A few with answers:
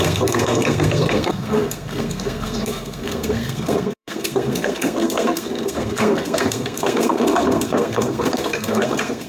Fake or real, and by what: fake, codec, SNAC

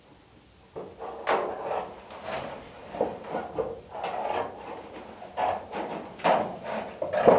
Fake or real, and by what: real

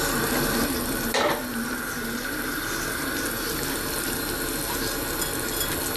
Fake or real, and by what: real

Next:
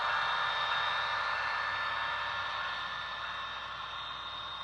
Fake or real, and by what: real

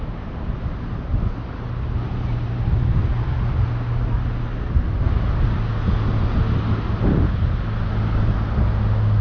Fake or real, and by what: real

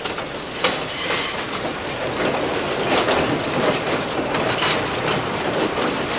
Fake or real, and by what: real